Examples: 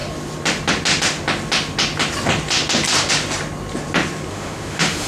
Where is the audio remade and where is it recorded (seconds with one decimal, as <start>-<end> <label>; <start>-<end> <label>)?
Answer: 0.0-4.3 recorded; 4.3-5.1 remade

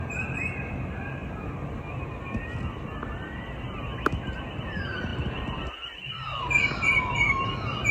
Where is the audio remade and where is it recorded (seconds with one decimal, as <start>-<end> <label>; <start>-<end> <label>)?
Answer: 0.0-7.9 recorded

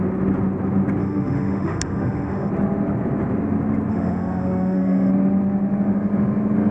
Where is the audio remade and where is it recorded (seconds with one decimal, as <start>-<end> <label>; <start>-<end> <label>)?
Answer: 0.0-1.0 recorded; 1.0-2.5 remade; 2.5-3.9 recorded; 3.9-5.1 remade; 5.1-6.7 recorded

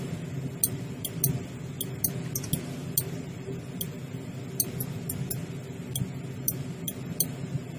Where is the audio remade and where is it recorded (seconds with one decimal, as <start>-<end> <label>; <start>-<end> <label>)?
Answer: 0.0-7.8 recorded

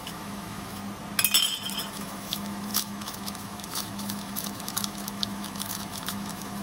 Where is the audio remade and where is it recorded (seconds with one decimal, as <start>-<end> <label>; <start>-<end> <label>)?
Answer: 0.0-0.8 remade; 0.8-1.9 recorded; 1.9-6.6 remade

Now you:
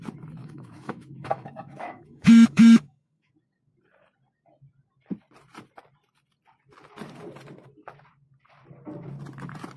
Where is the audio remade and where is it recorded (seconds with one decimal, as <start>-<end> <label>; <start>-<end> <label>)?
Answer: 0.0-0.4 recorded; 0.4-3.3 remade; 3.3-9.8 recorded

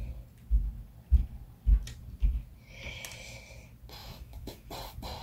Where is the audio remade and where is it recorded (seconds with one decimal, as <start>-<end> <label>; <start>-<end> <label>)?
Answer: 0.0-4.0 recorded; 4.0-4.7 remade; 4.7-5.2 recorded